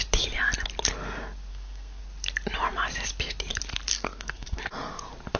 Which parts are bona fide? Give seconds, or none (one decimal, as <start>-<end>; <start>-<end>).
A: 0.0-1.5; 2.0-3.9; 4.6-5.4